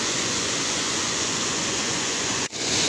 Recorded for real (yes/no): no